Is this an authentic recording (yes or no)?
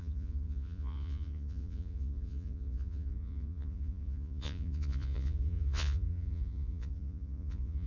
no